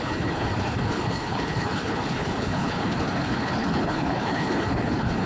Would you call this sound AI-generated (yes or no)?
yes